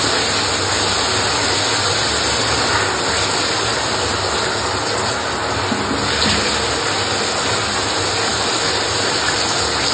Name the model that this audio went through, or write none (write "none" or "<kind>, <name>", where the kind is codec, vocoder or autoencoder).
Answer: none